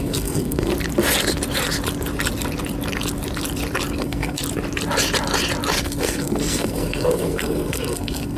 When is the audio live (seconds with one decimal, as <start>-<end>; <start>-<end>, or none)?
0.7-4.0; 4.4-5.8